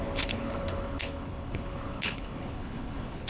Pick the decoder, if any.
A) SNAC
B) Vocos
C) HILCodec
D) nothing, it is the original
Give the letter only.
C